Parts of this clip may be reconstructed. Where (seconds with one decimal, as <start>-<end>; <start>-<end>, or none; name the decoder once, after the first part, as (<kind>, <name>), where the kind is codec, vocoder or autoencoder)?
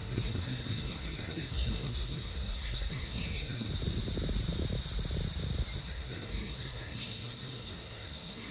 0.0-3.7 (codec, SNAC); 5.8-8.5